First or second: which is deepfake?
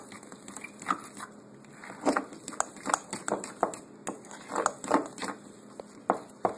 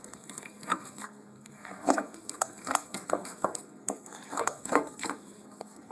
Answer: second